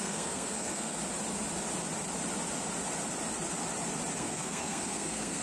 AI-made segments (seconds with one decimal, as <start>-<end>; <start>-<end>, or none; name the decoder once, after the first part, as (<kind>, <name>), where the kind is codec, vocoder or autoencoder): 0.0-1.0 (codec, SNAC); 4.2-5.4